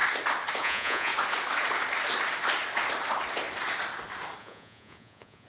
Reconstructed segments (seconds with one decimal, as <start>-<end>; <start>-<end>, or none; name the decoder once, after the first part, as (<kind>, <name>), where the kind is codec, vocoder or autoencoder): 0.6-1.1 (vocoder, Vocos); 4.4-5.5